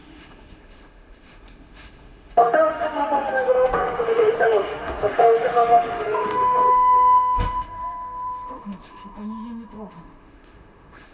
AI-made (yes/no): yes